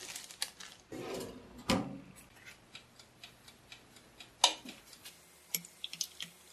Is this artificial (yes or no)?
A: no